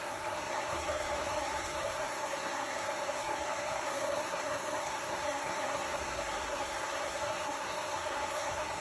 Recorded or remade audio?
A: remade